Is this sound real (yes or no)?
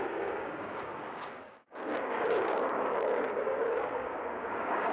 no